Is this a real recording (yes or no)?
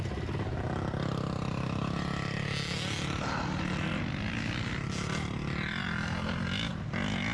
yes